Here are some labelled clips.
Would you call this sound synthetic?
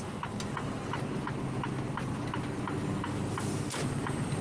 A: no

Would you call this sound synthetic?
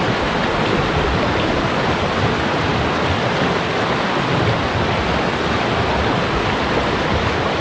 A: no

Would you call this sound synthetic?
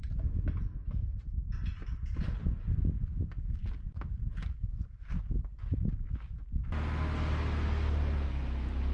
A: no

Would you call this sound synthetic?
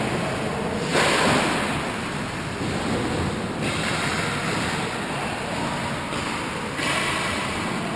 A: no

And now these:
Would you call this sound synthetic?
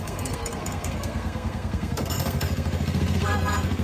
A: yes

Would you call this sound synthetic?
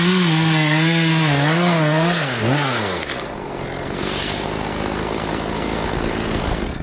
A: yes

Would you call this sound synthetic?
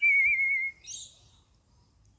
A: no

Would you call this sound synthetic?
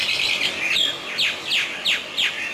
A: no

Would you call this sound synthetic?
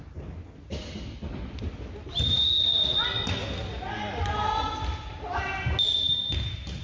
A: no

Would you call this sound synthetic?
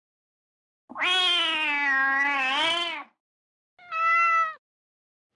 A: no